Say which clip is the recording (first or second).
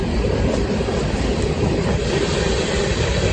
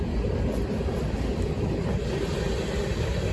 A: second